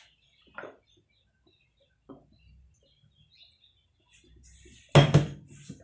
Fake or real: real